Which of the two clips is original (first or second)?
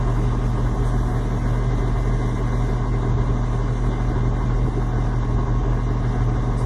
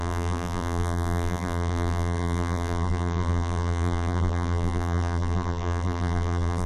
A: first